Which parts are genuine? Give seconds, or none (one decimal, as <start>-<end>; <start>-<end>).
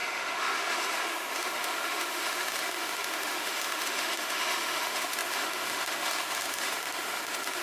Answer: none